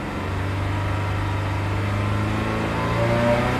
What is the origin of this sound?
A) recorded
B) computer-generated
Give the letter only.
A